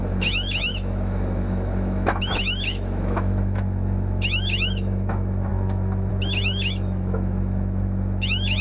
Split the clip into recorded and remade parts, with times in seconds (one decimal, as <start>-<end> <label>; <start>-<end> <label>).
0.0-8.6 remade